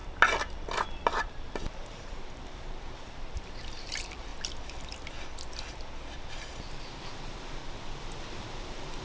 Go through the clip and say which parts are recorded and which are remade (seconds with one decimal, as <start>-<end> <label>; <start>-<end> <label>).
0.0-1.9 recorded; 1.9-4.3 remade; 4.3-6.6 recorded; 6.6-7.6 remade; 7.6-8.2 recorded; 8.2-9.0 remade